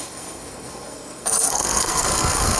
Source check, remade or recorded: remade